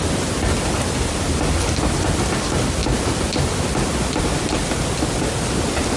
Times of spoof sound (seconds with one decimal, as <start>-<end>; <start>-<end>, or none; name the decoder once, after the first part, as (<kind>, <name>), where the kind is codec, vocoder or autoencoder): none